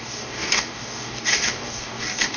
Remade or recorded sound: remade